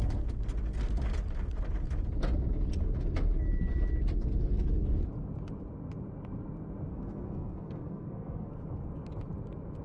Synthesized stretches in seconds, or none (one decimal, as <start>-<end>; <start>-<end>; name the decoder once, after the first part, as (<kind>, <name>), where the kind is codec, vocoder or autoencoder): 6.9-8.5 (codec, SNAC)